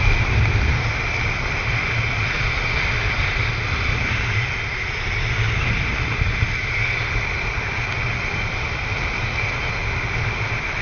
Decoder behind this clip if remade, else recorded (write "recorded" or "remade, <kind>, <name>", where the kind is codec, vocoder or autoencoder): recorded